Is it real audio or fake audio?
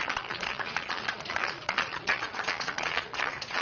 fake